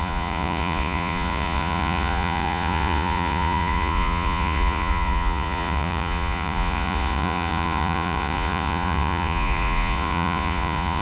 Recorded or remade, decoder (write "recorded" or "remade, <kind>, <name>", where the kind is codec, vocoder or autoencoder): remade, vocoder, Vocos